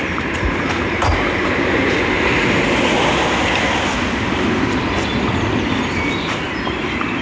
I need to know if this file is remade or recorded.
recorded